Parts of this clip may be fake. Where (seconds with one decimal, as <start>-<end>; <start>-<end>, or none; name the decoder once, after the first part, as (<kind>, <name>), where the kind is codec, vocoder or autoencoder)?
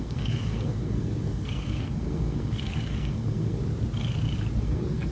0.0-3.6 (codec, SNAC); 4.6-5.1